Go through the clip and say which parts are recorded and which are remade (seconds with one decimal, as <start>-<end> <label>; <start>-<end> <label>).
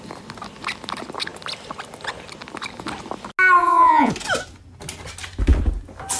0.0-3.6 recorded; 3.6-4.1 remade; 4.1-6.2 recorded